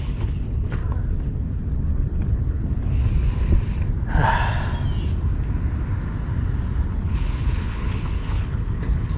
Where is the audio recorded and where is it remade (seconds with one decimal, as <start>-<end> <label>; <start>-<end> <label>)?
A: 0.0-0.8 remade; 0.8-1.7 recorded; 1.7-3.0 remade; 3.0-6.9 recorded; 6.9-9.2 remade